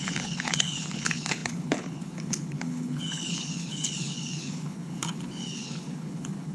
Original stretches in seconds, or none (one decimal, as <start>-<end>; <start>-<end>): none